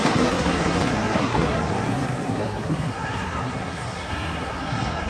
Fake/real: fake